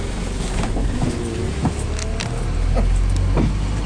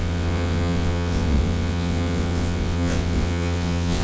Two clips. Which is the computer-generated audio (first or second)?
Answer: second